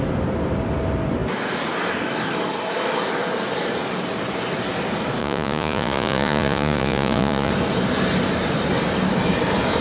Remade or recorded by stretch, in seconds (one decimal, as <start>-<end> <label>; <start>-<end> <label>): 0.0-5.2 recorded; 5.2-7.5 remade; 7.5-9.8 recorded